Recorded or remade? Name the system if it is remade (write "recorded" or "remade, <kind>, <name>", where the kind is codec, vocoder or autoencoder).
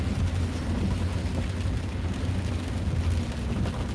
recorded